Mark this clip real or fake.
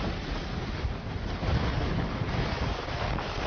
real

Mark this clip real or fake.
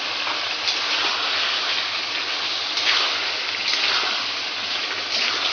real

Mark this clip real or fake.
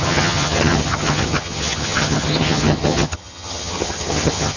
fake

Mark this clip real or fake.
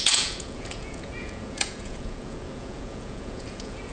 fake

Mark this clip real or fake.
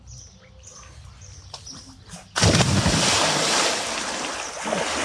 real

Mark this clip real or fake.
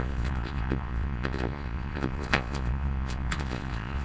fake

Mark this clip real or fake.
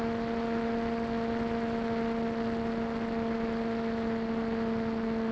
real